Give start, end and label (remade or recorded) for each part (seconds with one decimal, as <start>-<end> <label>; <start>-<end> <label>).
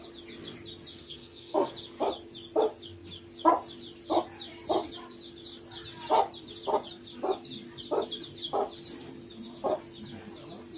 0.0-0.9 recorded; 0.9-1.7 remade; 1.7-10.8 recorded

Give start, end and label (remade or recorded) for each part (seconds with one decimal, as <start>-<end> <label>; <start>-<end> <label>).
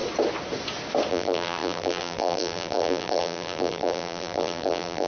0.0-1.1 recorded; 1.1-5.1 remade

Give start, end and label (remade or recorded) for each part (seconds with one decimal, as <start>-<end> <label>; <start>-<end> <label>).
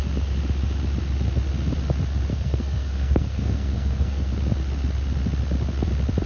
0.0-2.3 recorded; 2.3-4.3 remade; 4.3-6.3 recorded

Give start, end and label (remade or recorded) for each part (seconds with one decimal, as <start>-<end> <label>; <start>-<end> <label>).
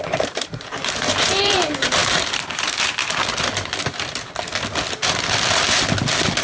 0.0-3.0 remade; 3.0-6.4 recorded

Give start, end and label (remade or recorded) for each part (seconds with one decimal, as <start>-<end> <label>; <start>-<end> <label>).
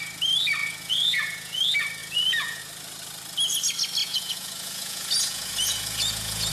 0.0-0.6 recorded; 0.6-1.6 remade; 1.6-2.0 recorded; 2.0-2.6 remade; 2.6-4.0 recorded; 4.0-6.5 remade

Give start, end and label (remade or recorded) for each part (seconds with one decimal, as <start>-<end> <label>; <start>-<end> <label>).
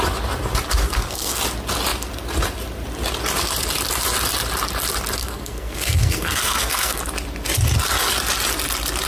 0.0-0.8 recorded; 0.8-1.4 remade; 1.4-5.2 recorded; 5.2-7.0 remade; 7.0-9.1 recorded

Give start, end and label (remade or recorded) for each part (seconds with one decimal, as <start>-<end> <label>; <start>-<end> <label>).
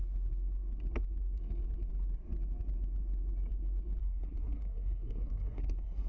0.0-4.0 recorded; 4.0-6.1 remade